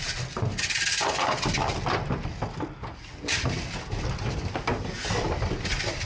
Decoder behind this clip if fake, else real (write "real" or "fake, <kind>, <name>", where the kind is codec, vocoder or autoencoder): real